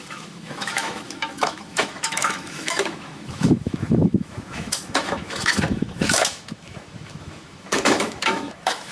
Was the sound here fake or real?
fake